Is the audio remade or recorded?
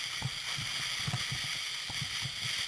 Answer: recorded